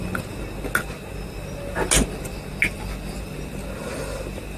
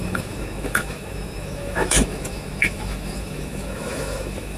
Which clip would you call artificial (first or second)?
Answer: second